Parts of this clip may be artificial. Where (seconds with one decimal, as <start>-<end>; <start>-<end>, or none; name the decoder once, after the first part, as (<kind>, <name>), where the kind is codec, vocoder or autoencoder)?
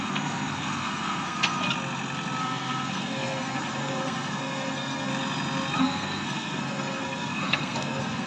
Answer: 0.0-1.6 (codec, SNAC); 2.4-5.1; 5.8-8.3